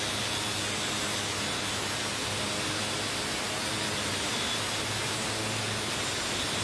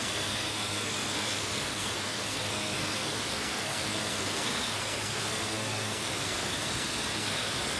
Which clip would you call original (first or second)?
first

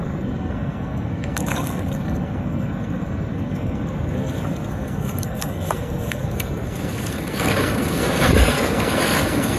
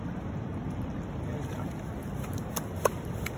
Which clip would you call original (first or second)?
second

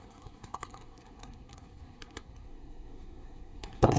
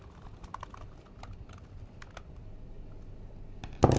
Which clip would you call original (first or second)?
second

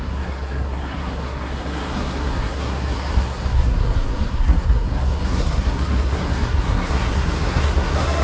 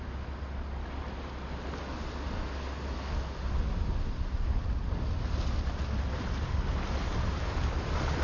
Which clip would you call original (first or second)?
second